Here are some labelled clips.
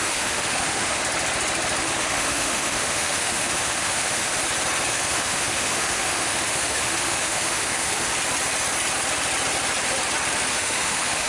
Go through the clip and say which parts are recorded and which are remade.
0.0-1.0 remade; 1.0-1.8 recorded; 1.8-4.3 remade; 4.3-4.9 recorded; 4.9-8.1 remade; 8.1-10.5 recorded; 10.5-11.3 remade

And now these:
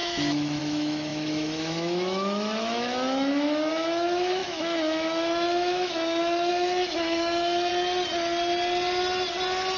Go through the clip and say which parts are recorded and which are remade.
0.0-7.7 remade; 7.7-9.8 recorded

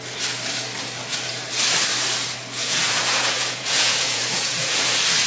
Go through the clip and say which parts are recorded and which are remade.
0.0-2.6 recorded; 2.6-4.8 remade; 4.8-5.3 recorded

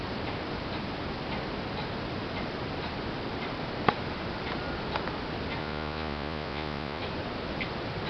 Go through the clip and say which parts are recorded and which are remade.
0.0-5.6 recorded; 5.6-7.0 remade; 7.0-8.1 recorded

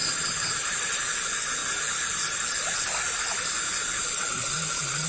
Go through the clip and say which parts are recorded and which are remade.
0.0-1.0 remade; 1.0-5.1 recorded

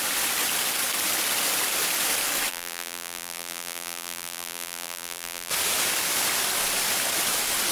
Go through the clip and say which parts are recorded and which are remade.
0.0-2.5 recorded; 2.5-5.5 remade; 5.5-7.7 recorded

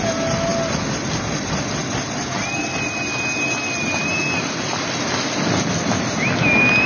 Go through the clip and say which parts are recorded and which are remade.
0.0-6.9 recorded

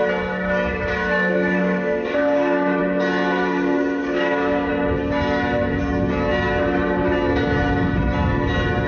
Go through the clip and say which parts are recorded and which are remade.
0.0-0.7 recorded; 0.7-2.8 remade; 2.8-4.0 recorded; 4.0-4.7 remade; 4.7-8.9 recorded